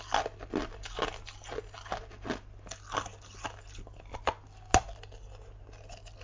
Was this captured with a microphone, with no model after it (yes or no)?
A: yes